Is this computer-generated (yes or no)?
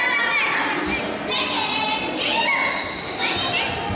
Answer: no